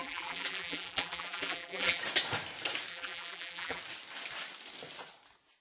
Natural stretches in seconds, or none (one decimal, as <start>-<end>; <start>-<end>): 2.0-2.9; 3.8-5.6